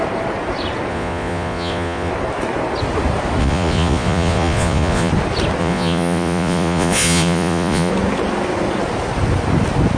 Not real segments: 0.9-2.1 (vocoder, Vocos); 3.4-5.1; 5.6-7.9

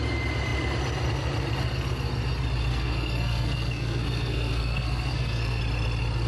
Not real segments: 2.7-5.6 (codec, SNAC)

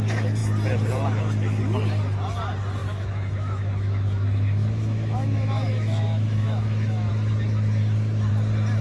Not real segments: 2.8-7.1 (autoencoder, DAC-VAE)

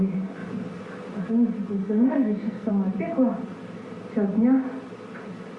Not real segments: 1.8-2.7 (codec, SNAC)